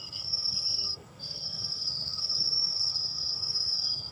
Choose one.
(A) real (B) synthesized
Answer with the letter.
B